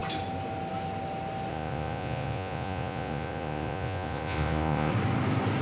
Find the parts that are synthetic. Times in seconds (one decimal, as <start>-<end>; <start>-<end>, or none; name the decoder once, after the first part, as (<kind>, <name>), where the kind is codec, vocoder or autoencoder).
1.5-4.9 (vocoder, Vocos)